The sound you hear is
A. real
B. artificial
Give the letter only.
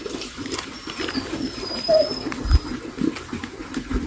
A